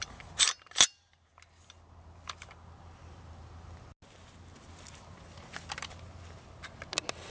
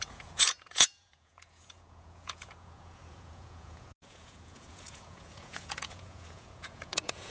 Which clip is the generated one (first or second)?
second